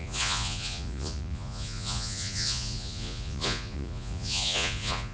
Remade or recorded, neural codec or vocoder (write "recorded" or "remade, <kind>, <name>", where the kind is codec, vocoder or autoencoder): remade, vocoder, Vocos